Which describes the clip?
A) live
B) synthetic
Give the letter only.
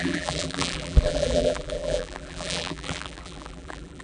B